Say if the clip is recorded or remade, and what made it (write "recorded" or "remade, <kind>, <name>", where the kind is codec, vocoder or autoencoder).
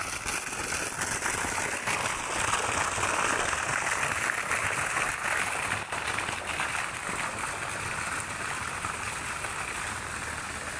recorded